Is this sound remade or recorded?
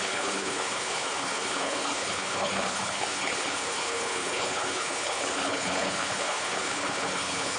remade